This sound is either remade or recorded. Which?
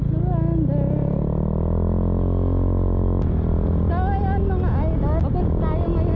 recorded